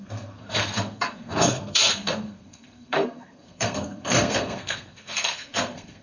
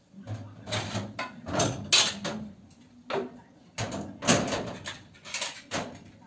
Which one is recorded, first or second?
second